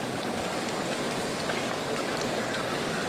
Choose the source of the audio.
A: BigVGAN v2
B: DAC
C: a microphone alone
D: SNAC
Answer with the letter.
B